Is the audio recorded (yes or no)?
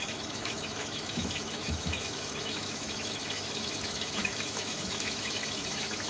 no